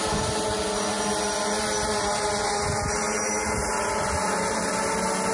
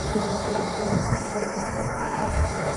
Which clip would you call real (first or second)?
first